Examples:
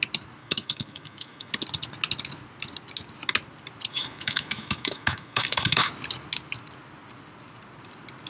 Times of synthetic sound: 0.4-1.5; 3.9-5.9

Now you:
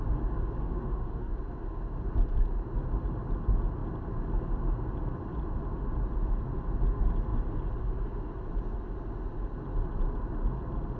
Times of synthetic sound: 0.6-1.3

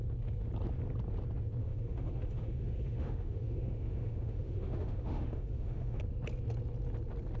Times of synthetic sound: 1.6-6.0

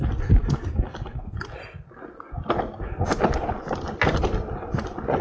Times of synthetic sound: none

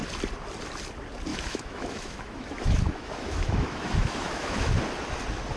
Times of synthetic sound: 1.3-4.7

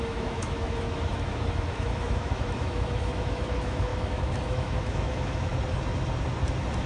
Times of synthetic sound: 0.0-5.5